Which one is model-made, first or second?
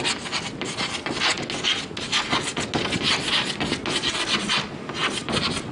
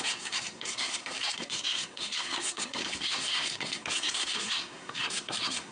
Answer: second